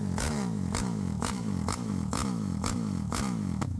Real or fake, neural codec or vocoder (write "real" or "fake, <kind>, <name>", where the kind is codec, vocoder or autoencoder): fake, autoencoder, DAC-VAE